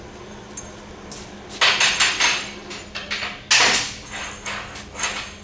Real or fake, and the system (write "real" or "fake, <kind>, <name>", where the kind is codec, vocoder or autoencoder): real